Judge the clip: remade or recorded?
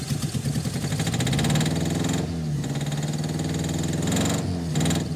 recorded